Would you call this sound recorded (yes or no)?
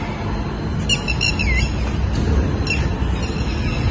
yes